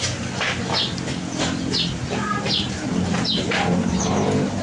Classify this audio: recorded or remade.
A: recorded